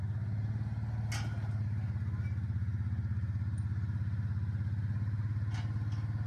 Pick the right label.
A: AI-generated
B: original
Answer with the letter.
B